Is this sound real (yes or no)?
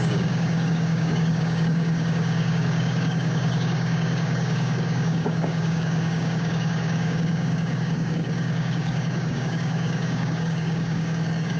no